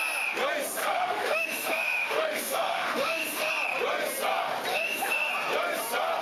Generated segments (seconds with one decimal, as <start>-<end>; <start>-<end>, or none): 0.8-3.5; 4.7-5.3